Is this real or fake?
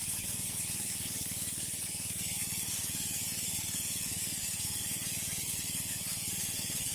fake